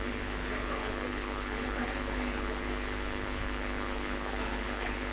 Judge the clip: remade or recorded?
remade